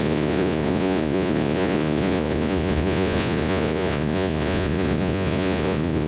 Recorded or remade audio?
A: remade